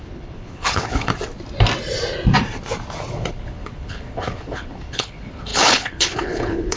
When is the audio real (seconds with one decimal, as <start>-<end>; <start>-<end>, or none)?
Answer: 1.1-3.1